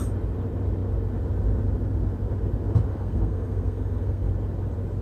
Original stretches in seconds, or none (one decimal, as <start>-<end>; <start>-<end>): 0.0-2.9; 4.3-5.0